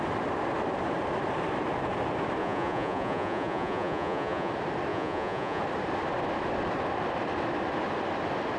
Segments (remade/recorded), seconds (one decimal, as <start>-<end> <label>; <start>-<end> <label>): 0.0-2.4 recorded; 2.4-4.5 remade; 4.5-4.9 recorded; 4.9-5.6 remade; 5.6-8.6 recorded